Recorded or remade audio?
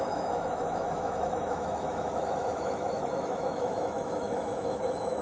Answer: remade